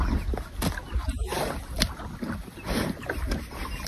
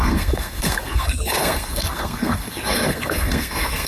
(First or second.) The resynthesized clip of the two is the second